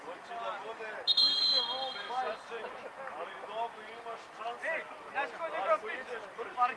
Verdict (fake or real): fake